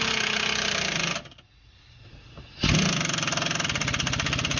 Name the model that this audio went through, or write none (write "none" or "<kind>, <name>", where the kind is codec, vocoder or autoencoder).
none